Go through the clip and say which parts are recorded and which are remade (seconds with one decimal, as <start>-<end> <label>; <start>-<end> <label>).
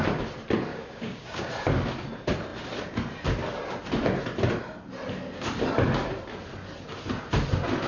0.0-0.7 recorded; 0.7-1.5 remade; 1.5-7.9 recorded